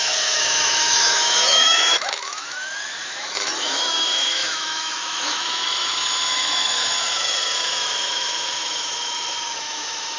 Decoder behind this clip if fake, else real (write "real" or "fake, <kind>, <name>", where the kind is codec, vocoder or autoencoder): fake, autoencoder, DAC-VAE